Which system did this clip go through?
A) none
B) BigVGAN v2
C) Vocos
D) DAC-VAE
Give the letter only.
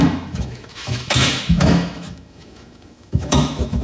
D